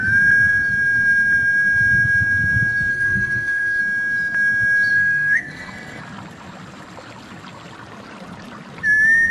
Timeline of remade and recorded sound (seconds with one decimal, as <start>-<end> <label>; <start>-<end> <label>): 0.0-2.9 recorded; 2.9-3.8 remade; 3.8-4.9 recorded; 4.9-6.0 remade; 6.0-9.3 recorded